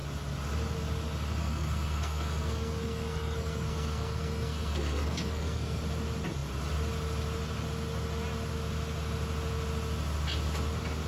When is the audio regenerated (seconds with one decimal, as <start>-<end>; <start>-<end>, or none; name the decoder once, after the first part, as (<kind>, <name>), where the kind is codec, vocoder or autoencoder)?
1.4-5.8 (codec, SNAC)